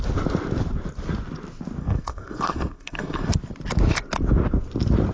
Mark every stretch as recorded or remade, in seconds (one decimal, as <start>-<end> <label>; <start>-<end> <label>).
0.0-1.8 recorded; 1.8-3.3 remade; 3.3-5.1 recorded